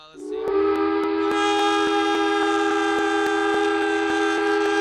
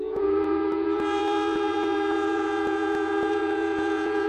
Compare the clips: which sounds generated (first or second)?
second